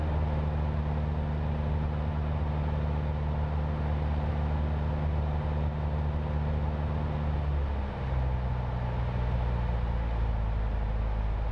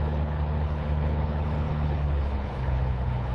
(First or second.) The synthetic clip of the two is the second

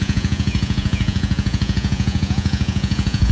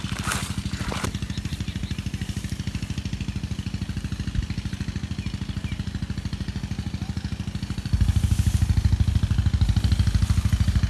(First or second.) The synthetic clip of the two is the first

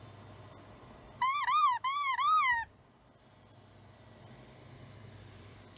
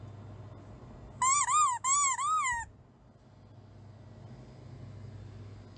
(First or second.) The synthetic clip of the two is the first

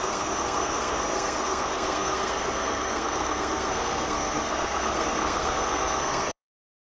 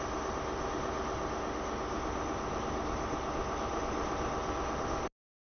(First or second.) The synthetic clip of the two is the first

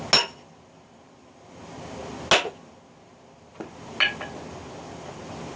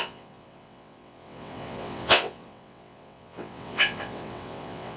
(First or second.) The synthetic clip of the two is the second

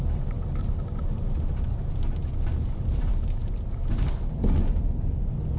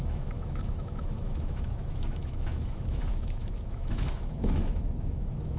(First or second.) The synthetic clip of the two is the second